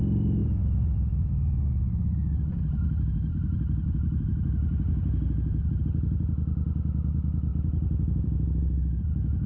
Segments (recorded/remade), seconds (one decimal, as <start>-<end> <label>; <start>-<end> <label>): 0.0-0.4 recorded; 0.4-1.3 remade; 1.3-3.3 recorded; 3.3-5.8 remade; 5.8-7.5 recorded; 7.5-9.0 remade; 9.0-9.5 recorded